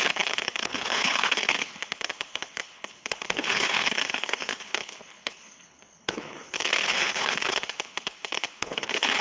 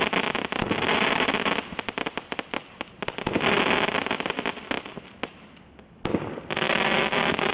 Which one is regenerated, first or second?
first